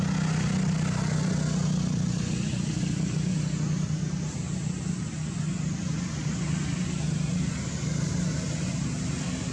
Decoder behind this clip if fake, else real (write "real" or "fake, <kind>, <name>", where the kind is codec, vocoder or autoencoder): real